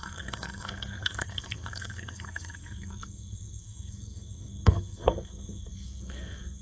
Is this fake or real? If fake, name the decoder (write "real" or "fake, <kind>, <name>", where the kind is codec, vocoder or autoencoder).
fake, codec, SNAC